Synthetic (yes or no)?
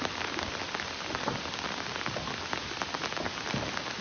no